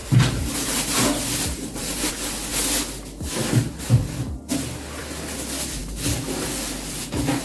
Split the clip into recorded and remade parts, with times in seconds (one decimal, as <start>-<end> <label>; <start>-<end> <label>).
0.0-2.1 remade; 2.1-7.4 recorded